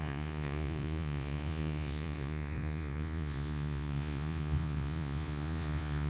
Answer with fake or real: fake